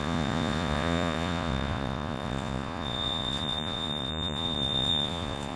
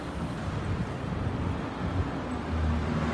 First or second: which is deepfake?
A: first